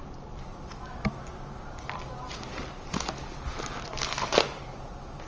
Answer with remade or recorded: recorded